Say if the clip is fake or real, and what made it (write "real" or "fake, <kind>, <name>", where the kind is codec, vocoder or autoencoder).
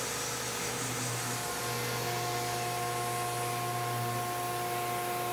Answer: real